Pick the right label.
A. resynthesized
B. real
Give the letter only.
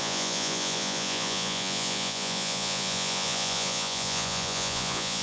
A